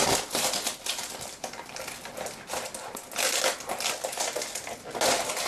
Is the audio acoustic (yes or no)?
yes